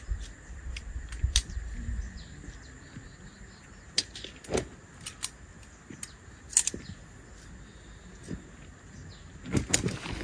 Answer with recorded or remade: recorded